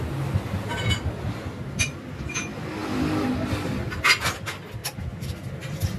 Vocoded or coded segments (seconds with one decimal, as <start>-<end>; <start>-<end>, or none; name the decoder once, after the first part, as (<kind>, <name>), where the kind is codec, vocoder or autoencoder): none